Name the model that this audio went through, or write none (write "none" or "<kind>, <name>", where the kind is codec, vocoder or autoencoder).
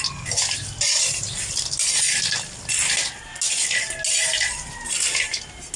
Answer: none